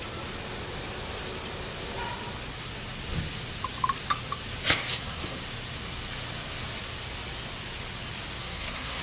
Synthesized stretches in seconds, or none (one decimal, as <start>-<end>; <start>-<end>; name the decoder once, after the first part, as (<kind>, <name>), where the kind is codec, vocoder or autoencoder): 4.9-5.4 (codec, SNAC); 8.4-9.0